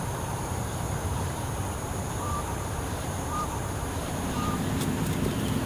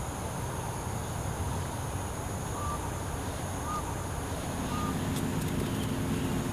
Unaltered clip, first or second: second